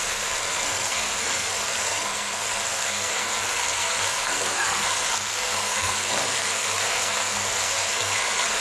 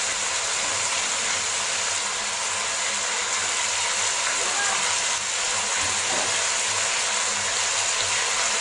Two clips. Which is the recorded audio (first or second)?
second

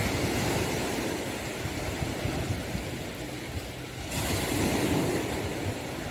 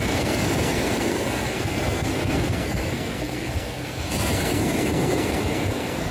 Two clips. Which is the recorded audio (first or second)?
first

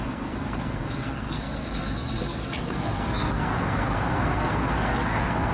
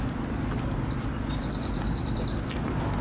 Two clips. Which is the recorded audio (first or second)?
second